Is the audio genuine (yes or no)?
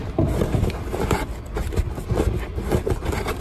yes